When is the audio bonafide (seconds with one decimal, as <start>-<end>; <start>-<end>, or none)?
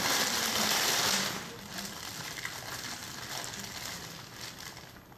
0.0-1.7; 2.6-5.2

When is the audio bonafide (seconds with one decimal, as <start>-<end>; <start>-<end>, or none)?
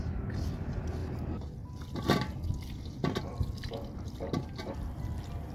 0.0-5.5